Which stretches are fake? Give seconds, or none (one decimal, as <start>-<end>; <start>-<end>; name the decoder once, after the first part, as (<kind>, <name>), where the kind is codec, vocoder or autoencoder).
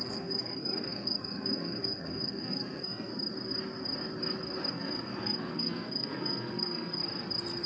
0.0-3.1 (codec, SNAC); 4.7-7.0